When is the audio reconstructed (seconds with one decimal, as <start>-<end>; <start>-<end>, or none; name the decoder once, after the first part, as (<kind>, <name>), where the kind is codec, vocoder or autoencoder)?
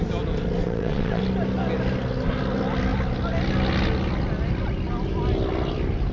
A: 0.6-1.2 (vocoder, WaveNeXt)